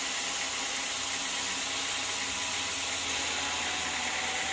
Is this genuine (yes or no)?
yes